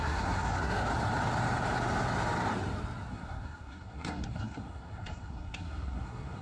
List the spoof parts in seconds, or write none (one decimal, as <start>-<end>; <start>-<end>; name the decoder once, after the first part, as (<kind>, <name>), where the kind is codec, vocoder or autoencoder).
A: 0.0-0.9 (codec, SNAC); 3.1-6.4